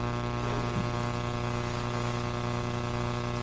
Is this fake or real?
real